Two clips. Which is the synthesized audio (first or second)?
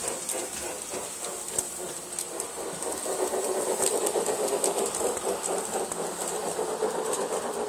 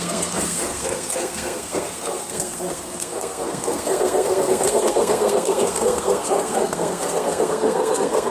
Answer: second